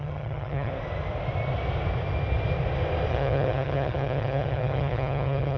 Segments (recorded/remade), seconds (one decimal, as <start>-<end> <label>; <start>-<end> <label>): 0.0-0.7 remade; 0.7-3.1 recorded; 3.1-5.6 remade